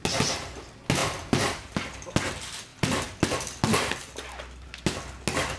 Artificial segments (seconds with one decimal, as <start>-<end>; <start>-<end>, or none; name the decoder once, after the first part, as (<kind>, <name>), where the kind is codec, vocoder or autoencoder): none